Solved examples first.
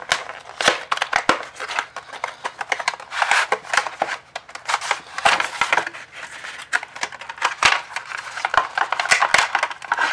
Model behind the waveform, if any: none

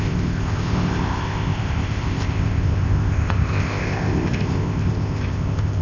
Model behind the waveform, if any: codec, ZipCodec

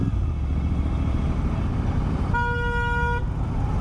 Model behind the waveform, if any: none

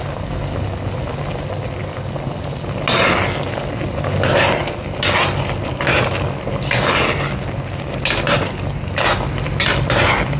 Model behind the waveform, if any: none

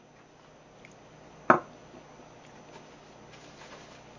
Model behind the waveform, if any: none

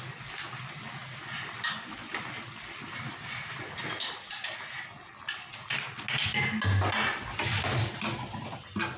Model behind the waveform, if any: none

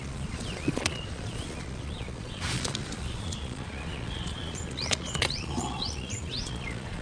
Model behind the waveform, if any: vocoder, Vocos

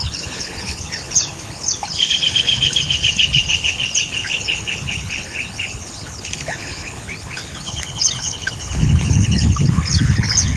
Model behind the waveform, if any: codec, HILCodec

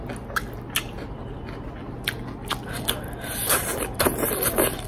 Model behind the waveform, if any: none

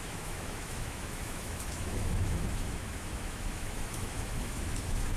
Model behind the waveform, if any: autoencoder, DAC-VAE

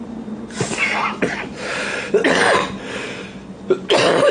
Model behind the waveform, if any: none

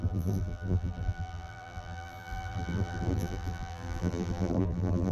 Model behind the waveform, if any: vocoder, BigVGAN v2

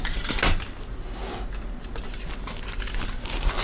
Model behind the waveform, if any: none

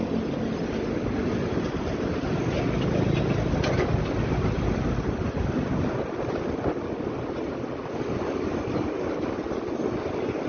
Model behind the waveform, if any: none